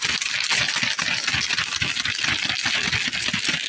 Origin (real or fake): real